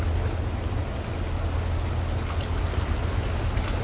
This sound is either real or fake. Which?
real